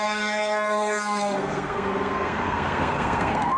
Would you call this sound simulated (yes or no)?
yes